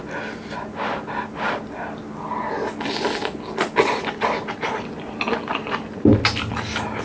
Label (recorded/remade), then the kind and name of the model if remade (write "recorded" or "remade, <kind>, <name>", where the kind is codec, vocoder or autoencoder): recorded